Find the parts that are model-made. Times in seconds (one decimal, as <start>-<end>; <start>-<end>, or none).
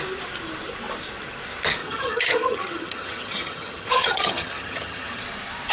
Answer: 1.8-5.2